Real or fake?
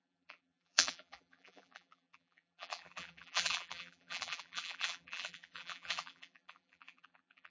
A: fake